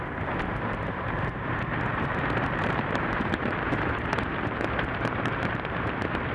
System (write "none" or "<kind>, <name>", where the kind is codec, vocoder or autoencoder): vocoder, BigVGAN v2